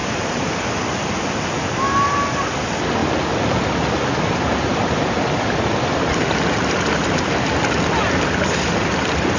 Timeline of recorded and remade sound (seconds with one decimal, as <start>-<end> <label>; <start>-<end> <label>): 0.0-9.4 recorded